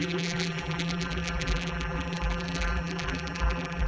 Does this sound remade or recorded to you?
remade